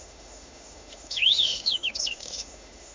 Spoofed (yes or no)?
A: yes